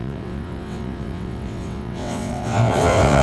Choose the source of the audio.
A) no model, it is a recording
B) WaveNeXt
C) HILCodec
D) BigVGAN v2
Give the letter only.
B